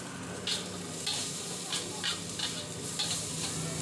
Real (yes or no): yes